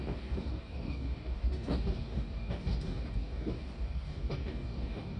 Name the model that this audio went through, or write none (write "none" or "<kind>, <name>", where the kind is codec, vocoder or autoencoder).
codec, DAC